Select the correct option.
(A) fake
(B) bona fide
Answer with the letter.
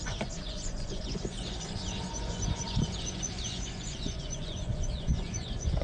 A